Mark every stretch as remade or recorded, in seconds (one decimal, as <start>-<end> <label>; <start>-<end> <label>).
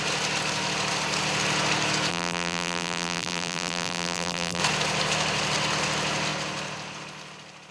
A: 0.0-2.1 recorded; 2.1-4.6 remade; 4.6-7.7 recorded